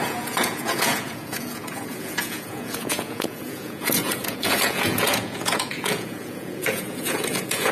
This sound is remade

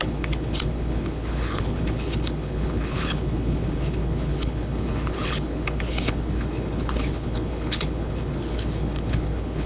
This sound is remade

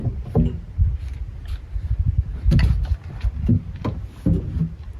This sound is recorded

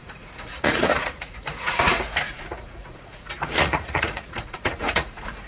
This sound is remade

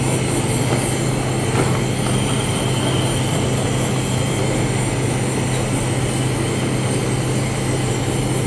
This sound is recorded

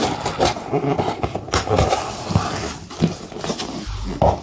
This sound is recorded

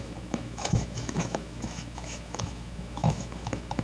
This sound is remade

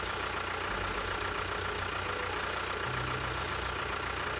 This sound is recorded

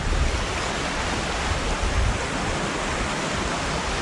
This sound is recorded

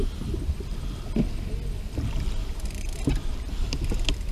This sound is recorded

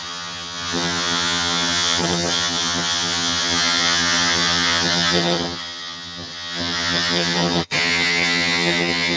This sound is remade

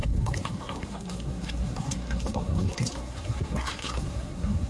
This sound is remade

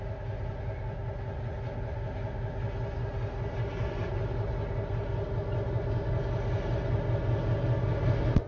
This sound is recorded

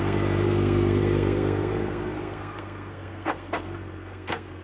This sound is remade